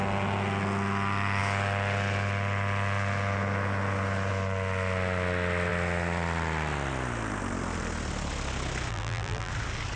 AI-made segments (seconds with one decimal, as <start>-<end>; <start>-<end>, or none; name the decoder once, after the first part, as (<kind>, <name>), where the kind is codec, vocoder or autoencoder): 8.9-9.5 (vocoder, BigVGAN v2)